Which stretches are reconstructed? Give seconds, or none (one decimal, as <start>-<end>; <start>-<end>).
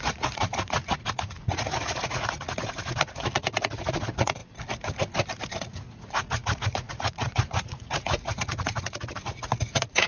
0.0-4.4; 5.6-10.1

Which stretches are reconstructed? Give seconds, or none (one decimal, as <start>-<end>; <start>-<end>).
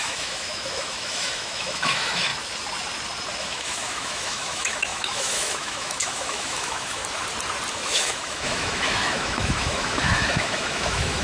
0.0-2.3; 3.4-7.0; 7.7-11.2